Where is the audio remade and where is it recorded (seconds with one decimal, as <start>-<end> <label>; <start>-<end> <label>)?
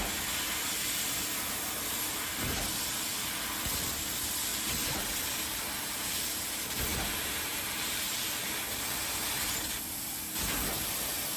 0.0-4.5 recorded; 4.5-6.5 remade; 6.5-6.9 recorded; 6.9-8.4 remade; 8.4-11.4 recorded